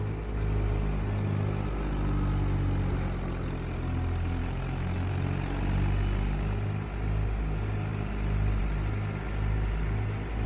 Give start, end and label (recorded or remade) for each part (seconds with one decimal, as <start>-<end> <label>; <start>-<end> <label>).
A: 0.0-4.4 recorded; 4.4-5.1 remade; 5.1-10.5 recorded

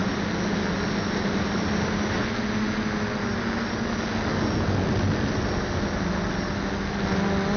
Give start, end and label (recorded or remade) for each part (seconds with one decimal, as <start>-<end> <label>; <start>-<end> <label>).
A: 0.0-7.6 recorded

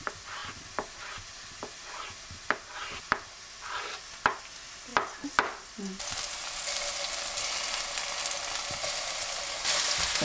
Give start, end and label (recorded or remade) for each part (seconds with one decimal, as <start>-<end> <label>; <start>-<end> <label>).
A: 0.0-10.2 recorded

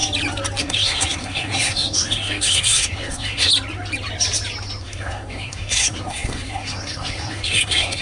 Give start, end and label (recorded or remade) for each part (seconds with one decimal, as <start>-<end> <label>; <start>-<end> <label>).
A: 0.0-0.6 recorded; 0.6-3.5 remade; 3.5-4.8 recorded; 4.8-8.0 remade

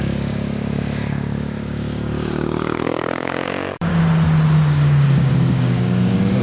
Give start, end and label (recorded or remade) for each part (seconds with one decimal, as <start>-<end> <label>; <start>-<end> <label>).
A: 0.0-3.9 remade; 3.9-4.6 recorded; 4.6-6.4 remade

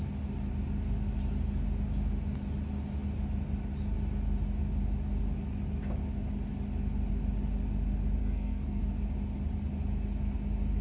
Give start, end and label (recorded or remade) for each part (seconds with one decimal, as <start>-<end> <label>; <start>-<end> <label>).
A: 0.0-8.2 recorded; 8.2-8.8 remade; 8.8-10.8 recorded

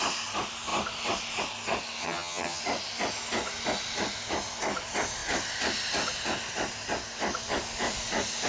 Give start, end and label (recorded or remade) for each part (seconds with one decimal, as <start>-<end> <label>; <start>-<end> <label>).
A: 0.0-2.0 recorded; 2.0-2.6 remade; 2.6-8.5 recorded